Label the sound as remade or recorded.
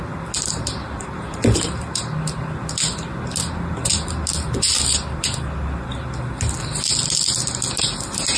recorded